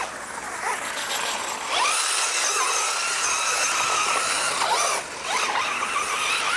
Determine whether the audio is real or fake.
real